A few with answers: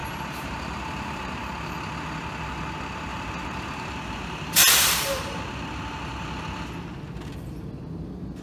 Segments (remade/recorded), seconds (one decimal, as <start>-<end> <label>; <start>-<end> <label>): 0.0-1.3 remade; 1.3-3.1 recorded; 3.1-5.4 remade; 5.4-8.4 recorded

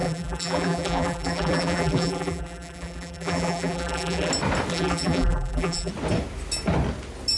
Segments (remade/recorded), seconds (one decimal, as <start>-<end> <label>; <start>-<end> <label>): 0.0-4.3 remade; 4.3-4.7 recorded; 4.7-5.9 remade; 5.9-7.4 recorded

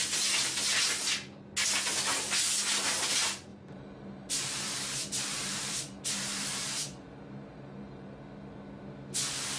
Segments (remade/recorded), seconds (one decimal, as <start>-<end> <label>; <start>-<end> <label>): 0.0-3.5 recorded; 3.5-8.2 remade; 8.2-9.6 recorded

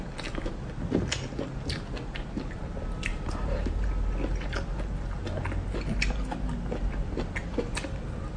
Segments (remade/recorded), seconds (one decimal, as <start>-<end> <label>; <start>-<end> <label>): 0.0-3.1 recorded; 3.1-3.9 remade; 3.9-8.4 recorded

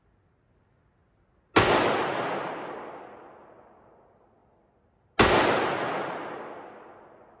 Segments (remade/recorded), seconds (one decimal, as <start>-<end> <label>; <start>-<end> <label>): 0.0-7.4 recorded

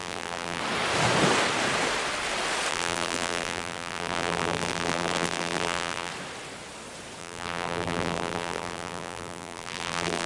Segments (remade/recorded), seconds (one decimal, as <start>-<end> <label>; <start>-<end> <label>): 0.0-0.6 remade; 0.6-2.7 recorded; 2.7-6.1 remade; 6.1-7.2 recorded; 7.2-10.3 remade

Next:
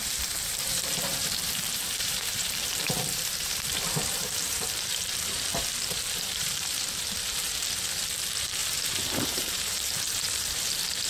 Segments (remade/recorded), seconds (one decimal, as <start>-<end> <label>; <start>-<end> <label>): 0.0-11.1 remade

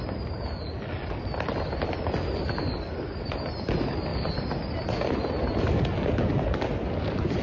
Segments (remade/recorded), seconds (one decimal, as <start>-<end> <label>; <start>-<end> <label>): 0.0-7.4 recorded